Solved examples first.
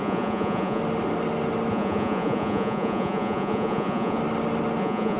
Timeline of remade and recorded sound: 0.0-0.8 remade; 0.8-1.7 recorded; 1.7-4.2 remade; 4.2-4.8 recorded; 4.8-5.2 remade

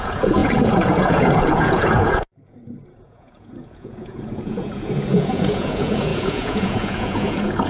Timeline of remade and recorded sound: 0.0-7.7 remade

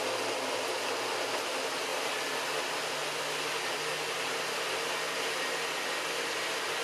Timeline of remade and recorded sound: 0.0-6.8 recorded

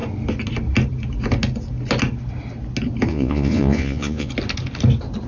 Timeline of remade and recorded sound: 0.0-3.1 recorded; 3.1-4.3 remade; 4.3-5.3 recorded

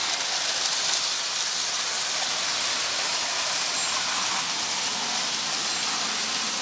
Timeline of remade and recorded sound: 0.0-6.6 recorded

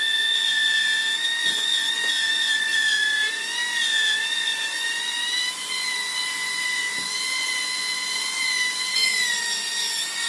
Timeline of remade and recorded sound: 0.0-10.3 remade

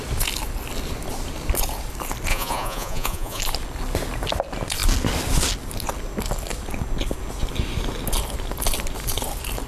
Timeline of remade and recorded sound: 0.0-2.3 recorded; 2.3-3.4 remade; 3.4-9.7 recorded